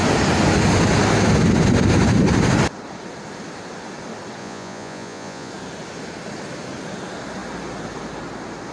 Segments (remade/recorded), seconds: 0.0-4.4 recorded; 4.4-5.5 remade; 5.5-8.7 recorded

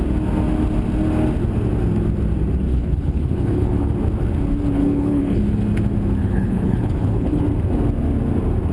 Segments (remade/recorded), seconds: 0.0-2.7 recorded; 2.7-3.9 remade; 3.9-4.8 recorded; 4.8-5.4 remade; 5.4-6.2 recorded; 6.2-7.4 remade; 7.4-8.7 recorded

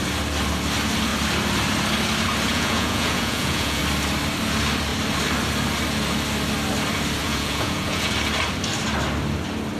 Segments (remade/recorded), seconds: 0.0-2.5 recorded; 2.5-3.8 remade; 3.8-7.2 recorded; 7.2-8.1 remade; 8.1-9.8 recorded

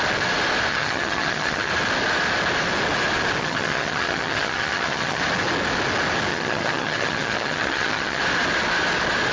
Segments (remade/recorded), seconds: 0.0-0.7 recorded; 0.7-1.7 remade; 1.7-3.4 recorded; 3.4-5.2 remade; 5.2-6.3 recorded; 6.3-8.2 remade; 8.2-9.3 recorded

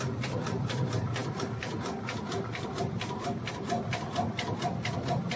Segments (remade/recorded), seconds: 0.0-5.4 recorded

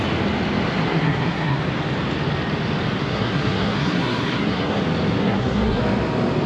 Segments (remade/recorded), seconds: 0.0-0.9 recorded; 0.9-1.6 remade; 1.6-3.0 recorded; 3.0-4.8 remade; 4.8-5.2 recorded; 5.2-5.8 remade; 5.8-6.5 recorded

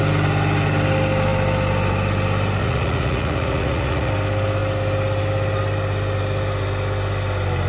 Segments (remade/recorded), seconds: 0.0-2.6 recorded; 2.6-4.1 remade; 4.1-7.7 recorded